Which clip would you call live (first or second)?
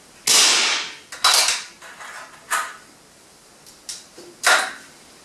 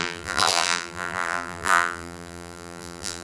first